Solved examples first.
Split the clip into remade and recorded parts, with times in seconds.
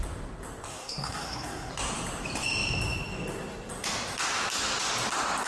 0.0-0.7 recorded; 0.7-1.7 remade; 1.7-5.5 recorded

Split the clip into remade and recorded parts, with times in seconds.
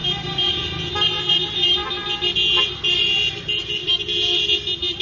0.0-5.0 recorded